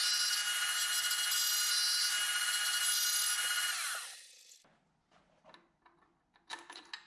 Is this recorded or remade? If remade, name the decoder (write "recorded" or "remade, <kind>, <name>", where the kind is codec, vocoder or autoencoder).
recorded